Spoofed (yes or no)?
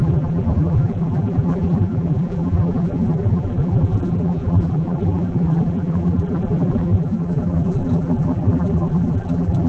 yes